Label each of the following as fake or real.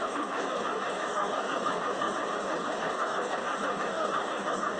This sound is fake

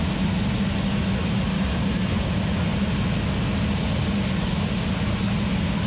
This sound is real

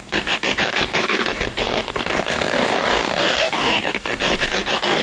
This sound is fake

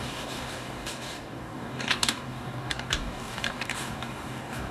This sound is fake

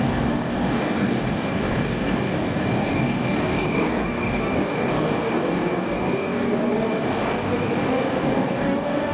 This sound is fake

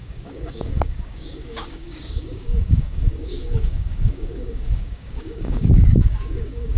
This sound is fake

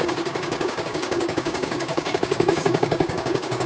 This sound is fake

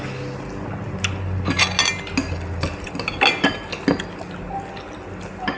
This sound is real